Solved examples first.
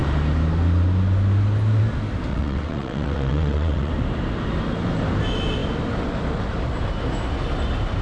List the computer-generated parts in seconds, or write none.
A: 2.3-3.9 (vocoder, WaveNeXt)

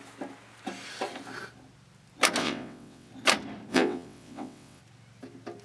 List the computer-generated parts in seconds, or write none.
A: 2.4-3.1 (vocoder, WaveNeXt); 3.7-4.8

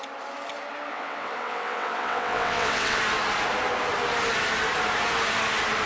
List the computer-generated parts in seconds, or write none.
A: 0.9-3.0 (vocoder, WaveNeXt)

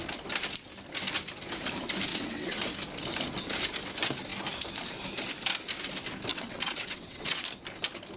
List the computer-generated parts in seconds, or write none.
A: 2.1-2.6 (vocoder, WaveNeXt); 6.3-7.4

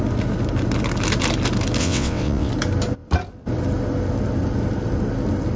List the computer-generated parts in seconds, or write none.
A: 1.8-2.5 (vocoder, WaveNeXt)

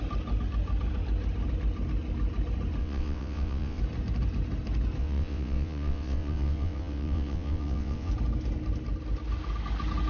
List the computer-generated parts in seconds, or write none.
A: 2.8-3.8 (vocoder, WaveNeXt); 5.0-8.1

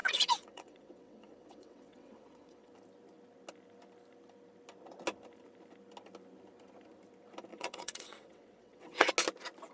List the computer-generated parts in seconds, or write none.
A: 0.0-2.7 (vocoder, WaveNeXt); 7.5-9.1